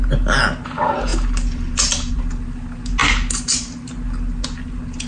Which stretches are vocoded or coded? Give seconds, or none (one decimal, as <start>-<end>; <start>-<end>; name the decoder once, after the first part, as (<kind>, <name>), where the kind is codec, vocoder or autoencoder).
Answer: none